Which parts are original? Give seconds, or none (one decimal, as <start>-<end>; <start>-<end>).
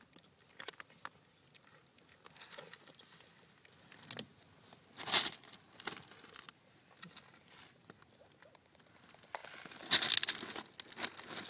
0.0-11.5